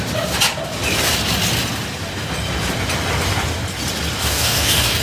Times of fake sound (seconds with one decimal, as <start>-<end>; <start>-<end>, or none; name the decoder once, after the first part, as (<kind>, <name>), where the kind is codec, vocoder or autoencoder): 4.2-5.0 (codec, DAC)